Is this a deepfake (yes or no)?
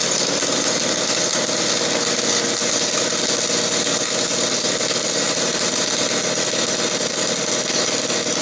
no